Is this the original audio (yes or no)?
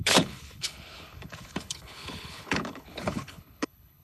no